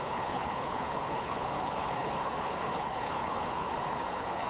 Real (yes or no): no